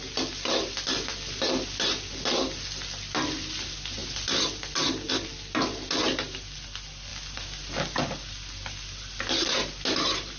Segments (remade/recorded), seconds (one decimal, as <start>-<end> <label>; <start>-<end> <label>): 0.0-10.4 recorded